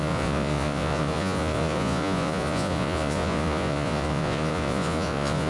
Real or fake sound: fake